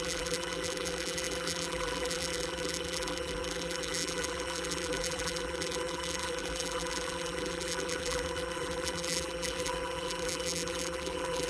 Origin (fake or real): fake